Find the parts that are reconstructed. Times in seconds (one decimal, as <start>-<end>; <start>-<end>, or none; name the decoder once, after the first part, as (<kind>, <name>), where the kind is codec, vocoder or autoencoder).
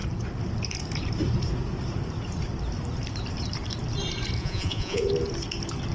4.4-5.1 (vocoder, Vocos)